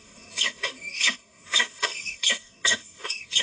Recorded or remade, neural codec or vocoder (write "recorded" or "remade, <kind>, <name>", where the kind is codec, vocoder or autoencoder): remade, codec, DAC